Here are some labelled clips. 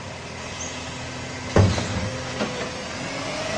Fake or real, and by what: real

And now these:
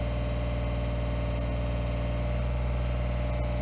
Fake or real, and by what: real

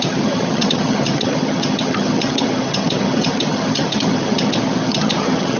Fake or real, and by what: fake, vocoder, HiFi-GAN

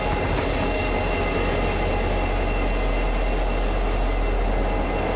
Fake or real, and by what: real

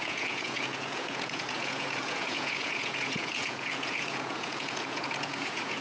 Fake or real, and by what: fake, vocoder, Vocos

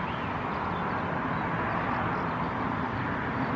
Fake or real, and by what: real